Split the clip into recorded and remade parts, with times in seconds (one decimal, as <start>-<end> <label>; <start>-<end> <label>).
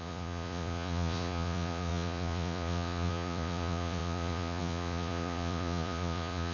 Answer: 0.0-6.5 remade